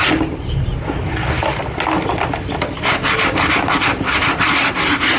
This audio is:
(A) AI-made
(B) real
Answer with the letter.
B